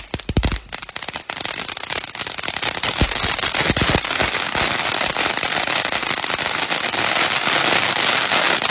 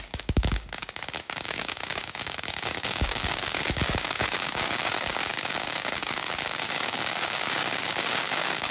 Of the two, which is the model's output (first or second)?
second